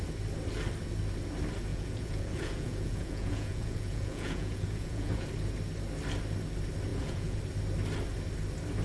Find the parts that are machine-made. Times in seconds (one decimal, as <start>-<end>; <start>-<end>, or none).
1.7-5.3; 6.9-7.4